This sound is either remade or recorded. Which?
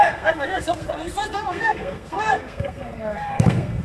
remade